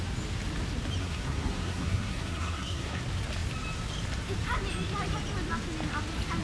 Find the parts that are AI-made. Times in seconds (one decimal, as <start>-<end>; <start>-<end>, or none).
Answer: 1.0-3.0

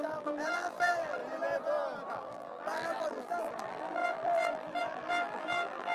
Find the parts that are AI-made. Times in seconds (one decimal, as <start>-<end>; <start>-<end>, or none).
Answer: 0.0-1.2; 2.1-5.9

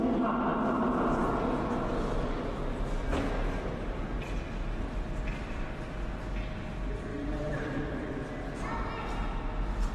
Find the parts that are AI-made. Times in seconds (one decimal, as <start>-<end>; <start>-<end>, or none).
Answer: 5.3-5.9; 7.1-8.1

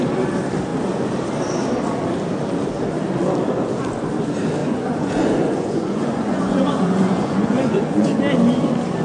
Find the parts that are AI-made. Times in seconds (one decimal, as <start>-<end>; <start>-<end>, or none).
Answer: 4.6-8.2